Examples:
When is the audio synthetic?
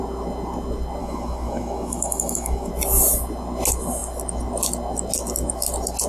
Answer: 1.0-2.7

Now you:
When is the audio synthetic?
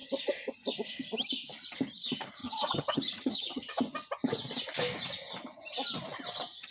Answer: 2.4-3.7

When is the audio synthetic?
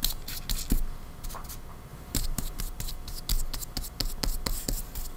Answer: 1.9-2.6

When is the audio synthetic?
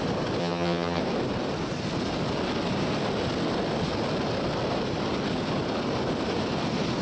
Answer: 0.4-1.0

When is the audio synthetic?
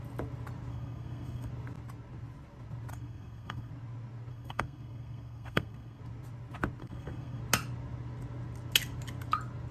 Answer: 0.7-1.5; 2.9-3.7; 4.3-6.0; 6.8-7.4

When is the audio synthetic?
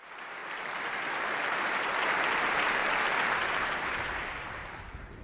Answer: 0.0-2.8; 3.5-5.2